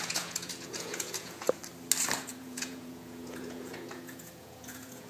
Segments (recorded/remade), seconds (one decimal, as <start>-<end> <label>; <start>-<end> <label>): 0.0-1.6 remade; 1.6-2.2 recorded; 2.2-5.1 remade